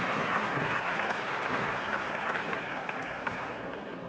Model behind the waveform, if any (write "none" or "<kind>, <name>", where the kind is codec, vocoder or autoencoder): codec, SNAC